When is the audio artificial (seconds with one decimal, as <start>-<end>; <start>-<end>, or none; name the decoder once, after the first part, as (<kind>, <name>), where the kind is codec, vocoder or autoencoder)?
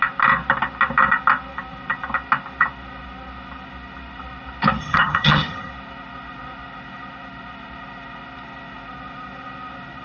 4.8-5.7 (vocoder, HiFi-GAN)